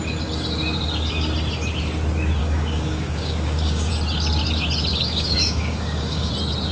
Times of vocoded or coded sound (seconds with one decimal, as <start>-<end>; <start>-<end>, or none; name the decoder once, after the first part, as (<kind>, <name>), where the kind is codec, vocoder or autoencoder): 2.4-3.9 (codec, DAC); 4.9-6.3